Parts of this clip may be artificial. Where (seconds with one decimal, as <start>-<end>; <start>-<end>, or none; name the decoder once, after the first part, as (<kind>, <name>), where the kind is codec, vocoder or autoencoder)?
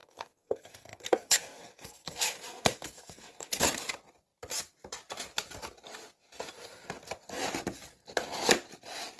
0.0-3.6 (codec, SNAC)